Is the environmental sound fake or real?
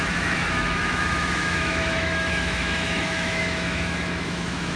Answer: fake